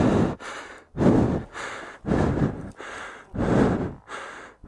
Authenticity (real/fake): real